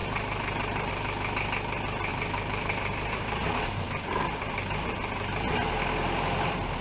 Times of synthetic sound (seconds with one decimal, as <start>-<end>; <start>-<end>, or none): 0.0-0.9; 2.1-4.4